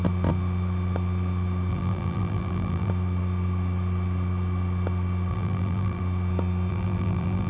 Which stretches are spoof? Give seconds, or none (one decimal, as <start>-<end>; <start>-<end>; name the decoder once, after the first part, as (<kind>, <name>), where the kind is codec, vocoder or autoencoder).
1.7-2.9 (vocoder, BigVGAN v2); 5.3-6.0; 6.7-7.5

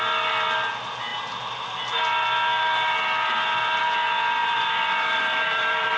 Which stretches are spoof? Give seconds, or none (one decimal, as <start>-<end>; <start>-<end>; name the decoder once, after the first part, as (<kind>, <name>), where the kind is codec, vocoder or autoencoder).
4.4-6.0 (vocoder, BigVGAN v2)

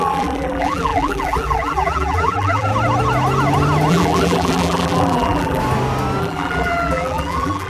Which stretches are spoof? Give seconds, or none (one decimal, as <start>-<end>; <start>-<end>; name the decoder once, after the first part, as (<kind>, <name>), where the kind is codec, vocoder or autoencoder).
0.0-2.7 (vocoder, BigVGAN v2); 3.9-5.6; 6.2-7.7

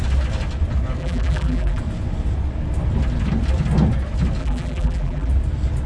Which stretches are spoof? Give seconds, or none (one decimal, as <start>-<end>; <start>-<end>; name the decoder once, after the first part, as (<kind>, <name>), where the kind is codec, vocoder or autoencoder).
1.0-1.8 (vocoder, BigVGAN v2); 4.4-5.3

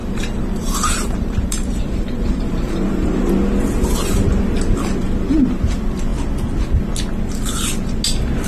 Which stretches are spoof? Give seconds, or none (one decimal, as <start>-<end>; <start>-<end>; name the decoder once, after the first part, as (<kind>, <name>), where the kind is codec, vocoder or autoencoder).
0.0-3.3 (vocoder, BigVGAN v2)

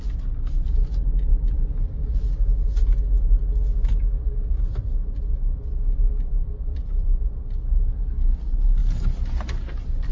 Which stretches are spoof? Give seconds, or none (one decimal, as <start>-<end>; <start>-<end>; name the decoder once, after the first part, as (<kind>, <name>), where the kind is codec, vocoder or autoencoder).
1.3-2.8 (vocoder, BigVGAN v2); 6.3-7.2

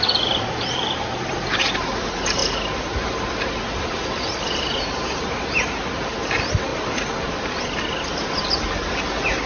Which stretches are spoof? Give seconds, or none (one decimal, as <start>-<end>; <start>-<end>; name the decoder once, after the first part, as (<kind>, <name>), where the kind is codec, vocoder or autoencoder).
2.4-3.3 (vocoder, BigVGAN v2)